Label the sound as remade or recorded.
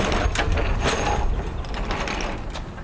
recorded